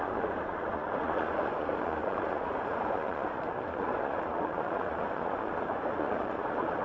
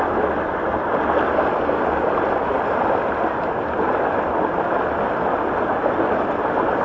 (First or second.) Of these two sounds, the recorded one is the second